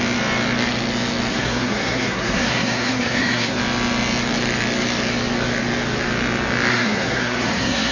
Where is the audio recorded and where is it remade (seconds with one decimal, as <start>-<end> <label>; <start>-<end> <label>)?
0.0-1.3 recorded; 1.3-3.6 remade; 3.6-6.7 recorded; 6.7-7.9 remade

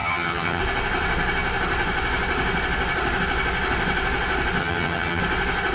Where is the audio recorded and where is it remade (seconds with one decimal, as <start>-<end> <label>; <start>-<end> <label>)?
0.0-0.6 remade; 0.6-4.6 recorded; 4.6-5.2 remade; 5.2-5.7 recorded